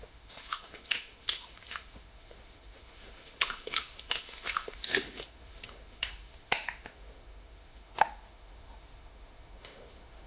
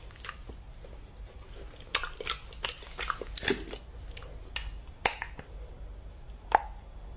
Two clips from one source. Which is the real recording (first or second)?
second